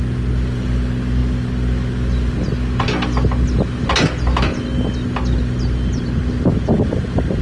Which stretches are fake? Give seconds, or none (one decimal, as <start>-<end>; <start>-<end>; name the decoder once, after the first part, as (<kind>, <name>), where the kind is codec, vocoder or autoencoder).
none